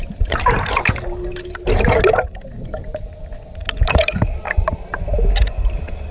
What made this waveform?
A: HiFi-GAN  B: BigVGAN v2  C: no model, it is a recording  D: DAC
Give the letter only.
C